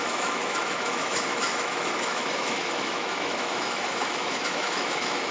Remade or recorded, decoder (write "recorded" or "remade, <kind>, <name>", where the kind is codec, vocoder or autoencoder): remade, autoencoder, DAC-VAE